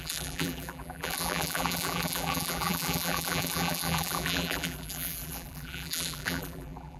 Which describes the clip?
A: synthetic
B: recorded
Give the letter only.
A